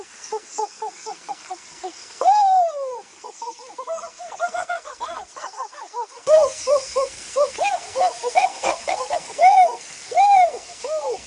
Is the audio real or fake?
fake